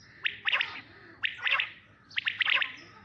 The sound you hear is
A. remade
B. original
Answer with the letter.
B